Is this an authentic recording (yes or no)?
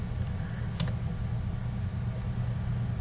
yes